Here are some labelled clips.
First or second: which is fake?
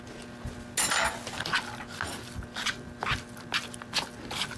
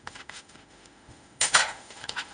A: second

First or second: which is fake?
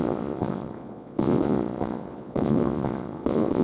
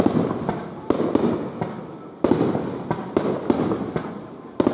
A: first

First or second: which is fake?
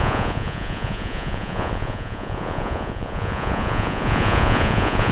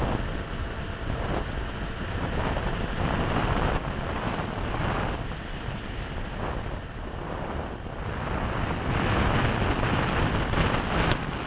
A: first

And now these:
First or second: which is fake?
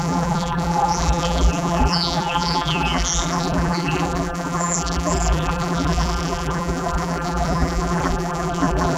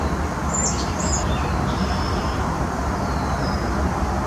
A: first